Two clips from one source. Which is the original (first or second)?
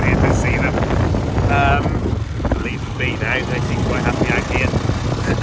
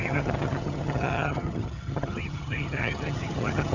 first